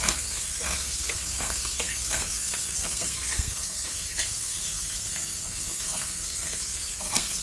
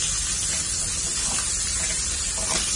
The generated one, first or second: first